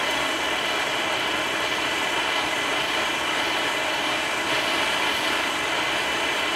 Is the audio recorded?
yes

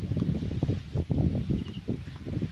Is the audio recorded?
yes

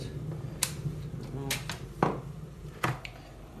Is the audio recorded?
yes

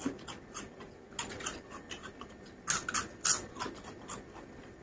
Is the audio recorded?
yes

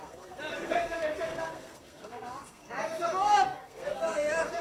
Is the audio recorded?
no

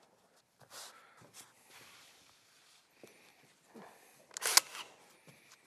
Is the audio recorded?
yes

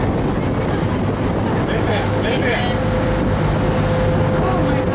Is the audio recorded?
yes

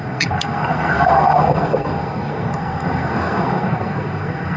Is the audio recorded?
no